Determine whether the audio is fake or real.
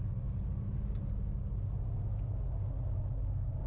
real